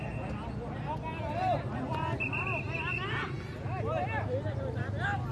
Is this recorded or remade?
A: recorded